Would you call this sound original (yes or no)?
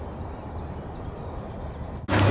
yes